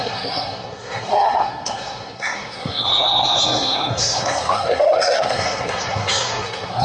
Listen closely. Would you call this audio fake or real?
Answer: fake